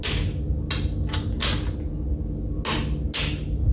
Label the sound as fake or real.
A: real